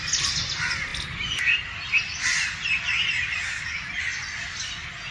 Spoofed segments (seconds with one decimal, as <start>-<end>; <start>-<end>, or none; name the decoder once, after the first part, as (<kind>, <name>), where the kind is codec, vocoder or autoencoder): none